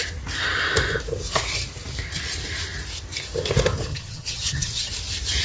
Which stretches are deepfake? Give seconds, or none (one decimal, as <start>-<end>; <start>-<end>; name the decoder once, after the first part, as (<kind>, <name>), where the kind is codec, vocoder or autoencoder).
3.9-4.9 (vocoder, HiFi-GAN)